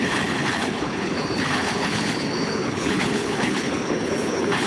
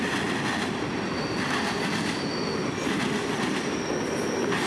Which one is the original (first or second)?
second